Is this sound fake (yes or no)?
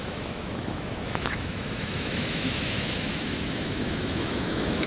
yes